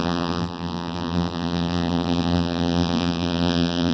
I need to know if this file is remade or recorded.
remade